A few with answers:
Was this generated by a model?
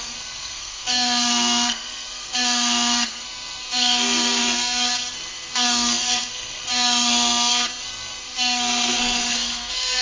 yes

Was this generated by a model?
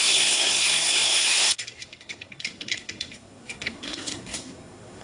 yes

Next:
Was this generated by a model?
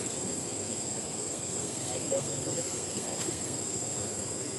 yes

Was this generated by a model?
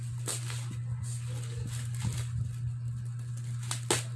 no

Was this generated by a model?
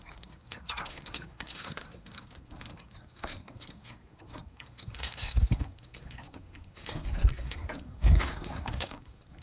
yes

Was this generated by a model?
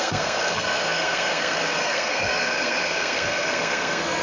yes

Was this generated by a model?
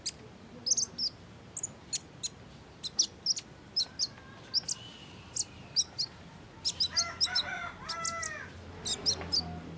no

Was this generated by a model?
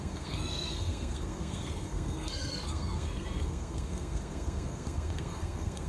yes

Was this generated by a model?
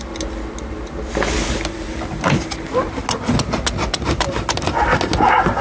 no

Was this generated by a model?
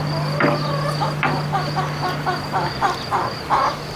no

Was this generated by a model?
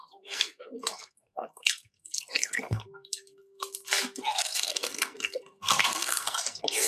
yes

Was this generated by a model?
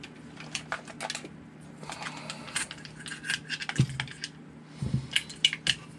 no